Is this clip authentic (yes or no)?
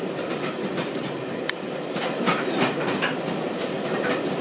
yes